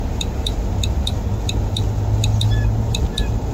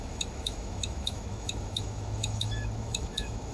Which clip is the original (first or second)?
first